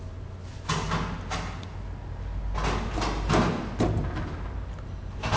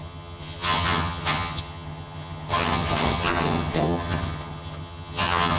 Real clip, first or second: first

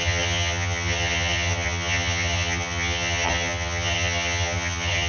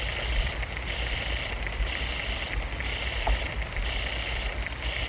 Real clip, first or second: second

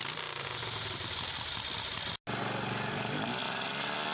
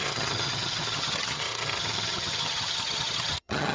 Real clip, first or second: first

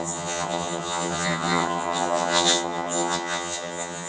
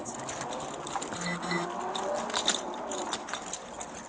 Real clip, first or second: second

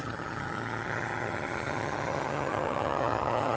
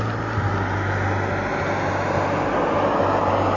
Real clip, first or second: second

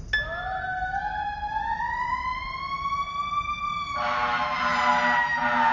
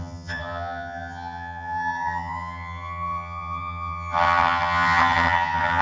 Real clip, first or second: first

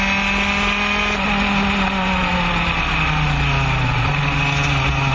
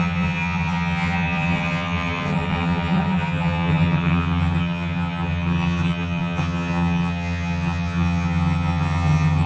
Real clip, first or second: first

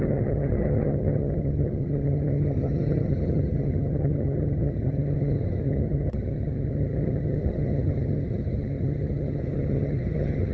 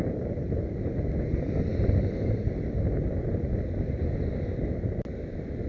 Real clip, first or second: second